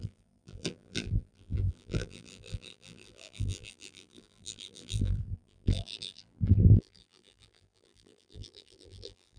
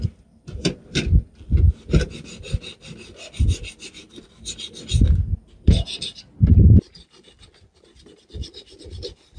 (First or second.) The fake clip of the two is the first